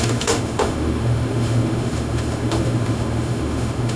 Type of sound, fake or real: fake